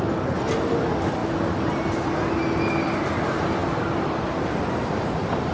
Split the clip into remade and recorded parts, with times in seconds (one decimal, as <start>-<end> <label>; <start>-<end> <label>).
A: 0.0-5.5 recorded